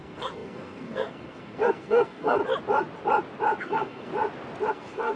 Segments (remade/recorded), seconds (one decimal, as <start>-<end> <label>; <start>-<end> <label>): 0.0-2.4 remade; 2.4-3.6 recorded; 3.6-4.1 remade; 4.1-4.7 recorded; 4.7-5.2 remade